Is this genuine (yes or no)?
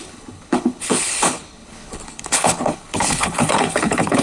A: no